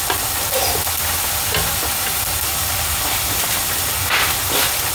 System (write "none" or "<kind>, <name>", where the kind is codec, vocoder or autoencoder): none